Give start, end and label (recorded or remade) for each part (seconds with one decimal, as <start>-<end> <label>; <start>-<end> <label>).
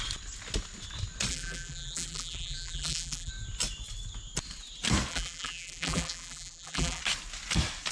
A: 0.0-1.3 recorded; 1.3-3.3 remade; 3.3-5.1 recorded; 5.1-7.0 remade; 7.0-7.9 recorded